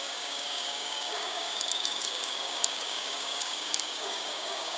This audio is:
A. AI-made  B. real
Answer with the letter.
A